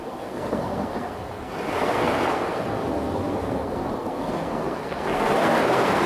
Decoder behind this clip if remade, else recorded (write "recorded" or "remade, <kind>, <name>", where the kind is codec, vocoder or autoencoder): remade, codec, SNAC